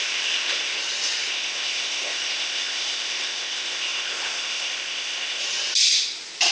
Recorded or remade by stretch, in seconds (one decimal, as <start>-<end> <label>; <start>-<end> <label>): 0.0-0.8 remade; 0.8-1.3 recorded; 1.3-5.4 remade; 5.4-6.5 recorded